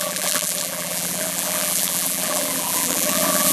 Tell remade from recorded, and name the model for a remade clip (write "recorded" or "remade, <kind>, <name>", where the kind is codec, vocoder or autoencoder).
remade, vocoder, BigVGAN v2